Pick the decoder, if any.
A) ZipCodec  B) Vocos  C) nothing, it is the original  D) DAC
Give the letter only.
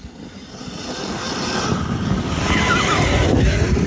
C